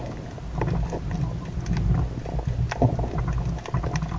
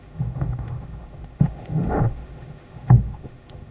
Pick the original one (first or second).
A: first